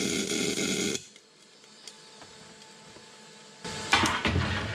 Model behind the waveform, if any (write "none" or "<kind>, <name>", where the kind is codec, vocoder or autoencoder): none